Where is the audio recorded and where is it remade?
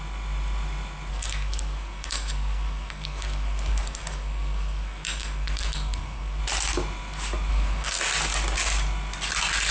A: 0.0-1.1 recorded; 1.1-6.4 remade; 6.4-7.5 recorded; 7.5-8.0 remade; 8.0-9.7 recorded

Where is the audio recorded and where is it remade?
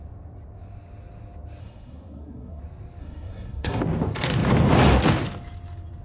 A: 0.0-1.6 recorded; 1.6-2.6 remade; 2.6-3.0 recorded; 3.0-3.8 remade; 3.8-6.0 recorded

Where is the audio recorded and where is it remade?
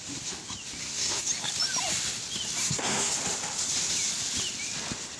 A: 0.0-0.8 recorded; 0.8-1.3 remade; 1.3-2.6 recorded; 2.6-3.1 remade; 3.1-5.2 recorded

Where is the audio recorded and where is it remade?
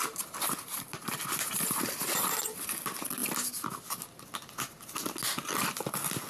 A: 0.0-6.3 recorded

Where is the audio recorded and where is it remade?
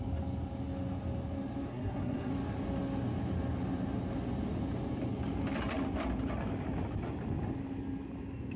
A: 0.0-1.7 recorded; 1.7-2.3 remade; 2.3-8.6 recorded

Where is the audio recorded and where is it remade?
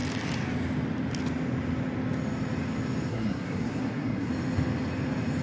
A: 0.0-3.1 recorded; 3.1-4.3 remade; 4.3-5.4 recorded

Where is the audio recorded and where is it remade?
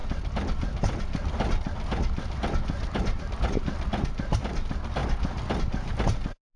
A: 0.0-6.6 recorded